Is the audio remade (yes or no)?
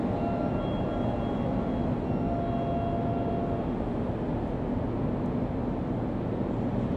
no